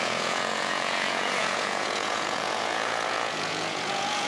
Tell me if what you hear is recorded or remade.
remade